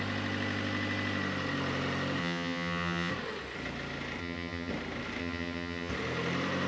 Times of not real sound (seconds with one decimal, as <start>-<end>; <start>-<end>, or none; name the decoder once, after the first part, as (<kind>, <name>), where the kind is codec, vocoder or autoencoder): 2.2-3.1 (vocoder, HiFi-GAN); 4.2-4.7; 5.2-5.9